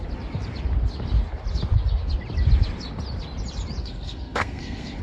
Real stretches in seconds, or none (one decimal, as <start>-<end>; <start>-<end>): 0.0-3.8